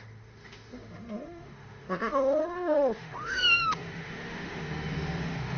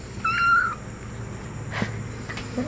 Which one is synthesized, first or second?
first